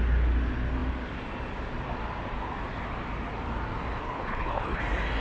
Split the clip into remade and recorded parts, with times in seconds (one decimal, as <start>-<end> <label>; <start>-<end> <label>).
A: 0.0-4.0 recorded; 4.0-4.8 remade; 4.8-5.2 recorded